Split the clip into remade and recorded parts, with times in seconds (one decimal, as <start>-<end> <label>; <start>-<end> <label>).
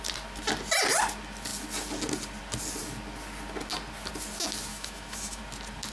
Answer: 0.0-4.7 recorded; 4.7-5.4 remade; 5.4-5.9 recorded